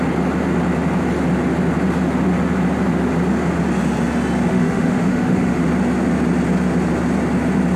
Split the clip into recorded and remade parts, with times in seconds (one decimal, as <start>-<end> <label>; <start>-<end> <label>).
0.0-4.5 recorded; 4.5-5.6 remade; 5.6-7.8 recorded